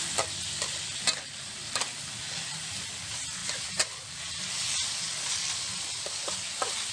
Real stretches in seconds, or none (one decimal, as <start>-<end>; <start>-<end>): 0.0-6.9